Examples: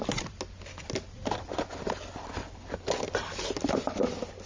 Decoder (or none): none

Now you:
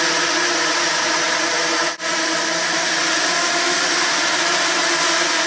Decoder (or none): none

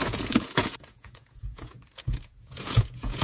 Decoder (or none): vocoder, Vocos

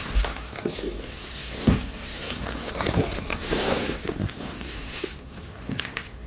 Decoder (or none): codec, SNAC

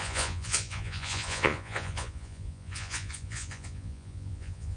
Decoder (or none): vocoder, Vocos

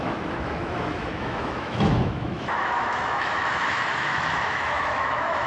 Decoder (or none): autoencoder, DAC-VAE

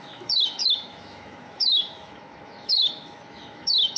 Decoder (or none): autoencoder, DAC-VAE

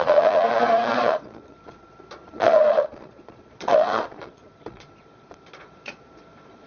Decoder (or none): vocoder, Vocos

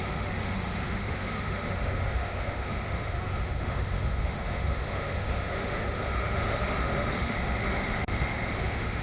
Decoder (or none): autoencoder, DAC-VAE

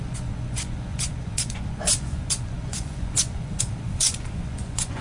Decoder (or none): vocoder, Vocos